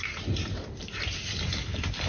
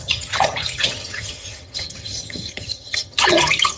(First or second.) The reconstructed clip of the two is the second